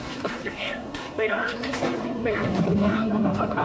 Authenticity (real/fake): fake